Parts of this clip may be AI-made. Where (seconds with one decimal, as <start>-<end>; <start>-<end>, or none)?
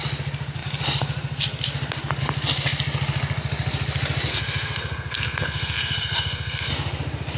4.3-6.7